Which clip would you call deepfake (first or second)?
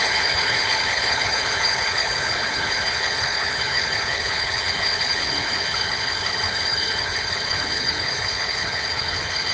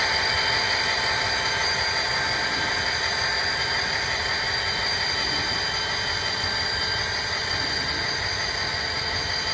first